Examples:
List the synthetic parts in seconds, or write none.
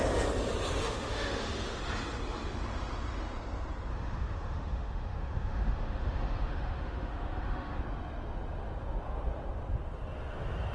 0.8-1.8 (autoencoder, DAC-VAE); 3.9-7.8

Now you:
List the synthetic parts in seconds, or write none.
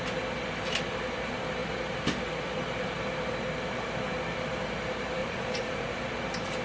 5.2-5.9 (vocoder, Vocos)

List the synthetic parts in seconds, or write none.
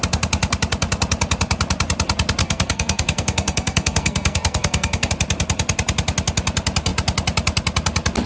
2.4-5.1 (codec, SNAC)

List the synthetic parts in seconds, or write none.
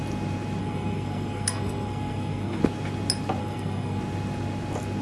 0.6-2.6 (codec, SNAC); 3.4-4.0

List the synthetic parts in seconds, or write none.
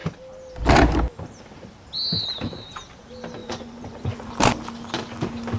3.4-4.3 (vocoder, Vocos)